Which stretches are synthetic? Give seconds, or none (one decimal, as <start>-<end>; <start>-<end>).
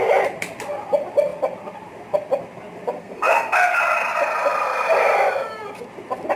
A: 3.0-3.8